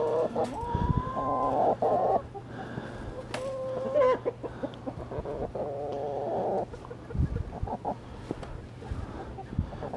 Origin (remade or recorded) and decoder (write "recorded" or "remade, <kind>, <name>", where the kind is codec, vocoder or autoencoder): recorded